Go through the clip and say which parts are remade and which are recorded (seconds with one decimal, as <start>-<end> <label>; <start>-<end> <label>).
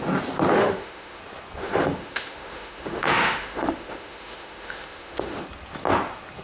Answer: 0.0-0.6 recorded; 0.6-1.2 remade; 1.2-1.6 recorded; 1.6-5.4 remade; 5.4-6.4 recorded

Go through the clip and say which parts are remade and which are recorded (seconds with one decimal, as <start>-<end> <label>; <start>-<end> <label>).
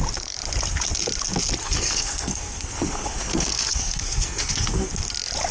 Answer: 0.0-1.6 recorded; 1.6-4.9 remade; 4.9-5.5 recorded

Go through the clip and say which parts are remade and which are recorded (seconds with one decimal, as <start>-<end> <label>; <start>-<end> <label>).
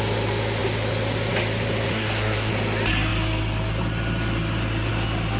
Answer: 0.0-1.9 recorded; 1.9-2.5 remade; 2.5-5.4 recorded